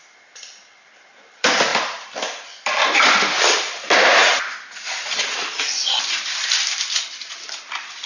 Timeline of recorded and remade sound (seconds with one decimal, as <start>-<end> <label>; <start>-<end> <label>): 0.0-4.2 remade; 4.2-7.1 recorded; 7.1-8.1 remade